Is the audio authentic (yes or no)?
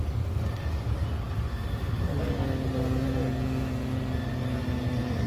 yes